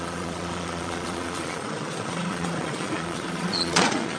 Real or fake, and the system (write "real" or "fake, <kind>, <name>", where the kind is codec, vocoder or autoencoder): fake, vocoder, Vocos